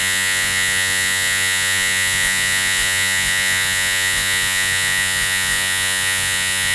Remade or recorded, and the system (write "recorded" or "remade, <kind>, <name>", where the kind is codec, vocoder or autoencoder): remade, vocoder, Vocos